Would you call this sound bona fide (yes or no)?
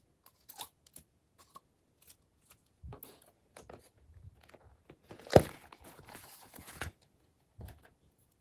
no